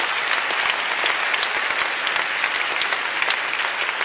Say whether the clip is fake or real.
real